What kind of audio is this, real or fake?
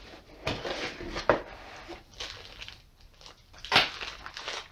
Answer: real